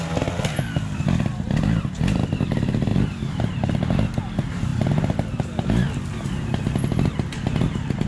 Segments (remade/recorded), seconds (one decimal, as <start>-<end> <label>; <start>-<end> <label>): 0.0-8.1 recorded